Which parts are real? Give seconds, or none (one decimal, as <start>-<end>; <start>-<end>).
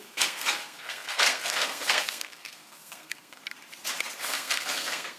3.4-4.2